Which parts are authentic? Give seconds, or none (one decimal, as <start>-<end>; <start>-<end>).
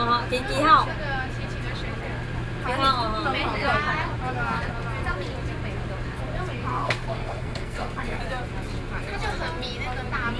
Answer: 0.0-6.7; 8.2-10.4